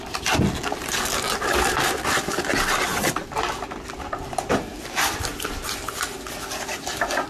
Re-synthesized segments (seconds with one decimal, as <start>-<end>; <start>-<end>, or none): 2.9-3.5; 4.7-5.9

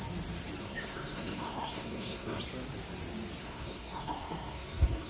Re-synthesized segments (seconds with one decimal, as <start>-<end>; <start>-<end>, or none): 0.6-2.4; 3.4-5.1